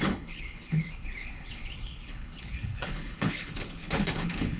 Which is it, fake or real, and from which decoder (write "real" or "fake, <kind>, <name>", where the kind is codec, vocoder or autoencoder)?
fake, codec, HILCodec